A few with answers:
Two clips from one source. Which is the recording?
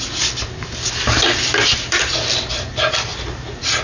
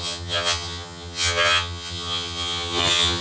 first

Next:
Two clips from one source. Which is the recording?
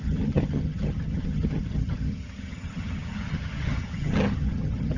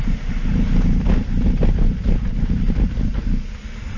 second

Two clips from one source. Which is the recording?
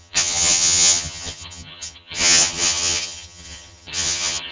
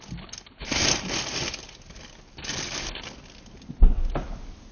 second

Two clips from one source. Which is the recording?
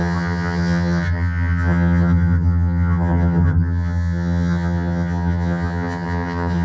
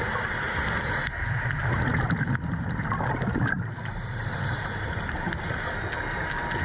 second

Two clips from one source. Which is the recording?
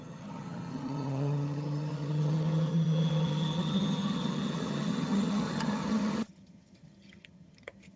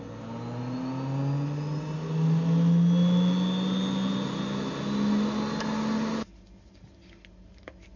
second